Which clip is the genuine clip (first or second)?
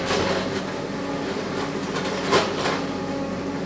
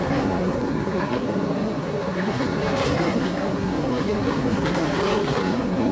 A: first